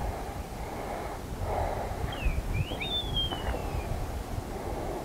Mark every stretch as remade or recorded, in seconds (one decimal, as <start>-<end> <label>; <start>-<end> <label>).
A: 0.0-0.6 remade; 0.6-3.6 recorded; 3.6-4.2 remade; 4.2-5.0 recorded